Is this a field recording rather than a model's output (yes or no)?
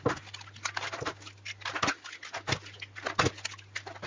yes